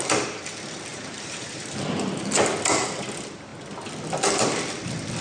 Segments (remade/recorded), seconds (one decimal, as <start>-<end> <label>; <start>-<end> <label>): 0.0-0.9 recorded; 0.9-1.6 remade; 1.6-5.2 recorded